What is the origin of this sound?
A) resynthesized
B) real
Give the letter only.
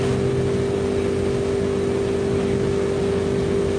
B